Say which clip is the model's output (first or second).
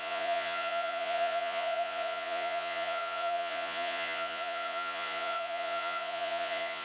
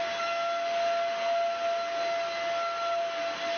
first